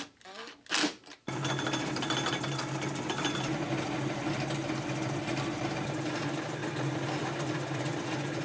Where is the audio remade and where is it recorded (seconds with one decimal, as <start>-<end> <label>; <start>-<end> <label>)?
0.0-8.4 recorded